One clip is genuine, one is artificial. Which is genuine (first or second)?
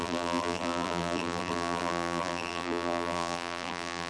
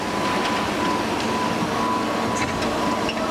second